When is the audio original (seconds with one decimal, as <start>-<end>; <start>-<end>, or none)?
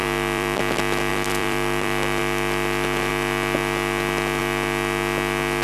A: 0.6-1.1; 2.2-5.6